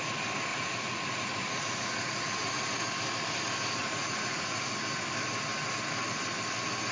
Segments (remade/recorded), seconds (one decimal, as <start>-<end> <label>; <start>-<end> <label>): 0.0-0.5 recorded; 0.5-2.6 remade; 2.6-3.8 recorded; 3.8-4.7 remade; 4.7-6.9 recorded